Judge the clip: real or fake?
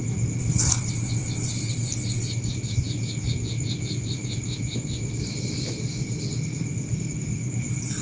real